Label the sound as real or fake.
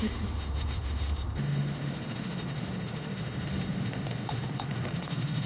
fake